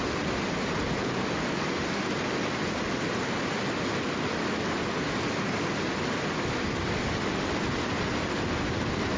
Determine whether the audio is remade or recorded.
recorded